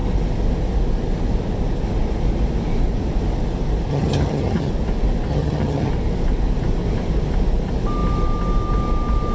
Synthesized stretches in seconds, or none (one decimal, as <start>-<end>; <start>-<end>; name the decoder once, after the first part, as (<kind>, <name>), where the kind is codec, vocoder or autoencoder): 3.9-4.7 (vocoder, HiFi-GAN); 5.3-5.9